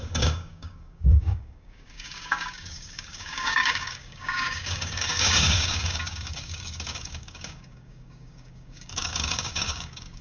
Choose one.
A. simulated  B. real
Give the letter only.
A